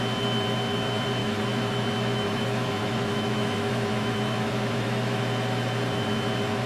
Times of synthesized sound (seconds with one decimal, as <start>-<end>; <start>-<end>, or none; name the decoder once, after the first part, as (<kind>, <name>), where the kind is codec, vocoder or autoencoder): 1.2-5.2 (autoencoder, DAC-VAE)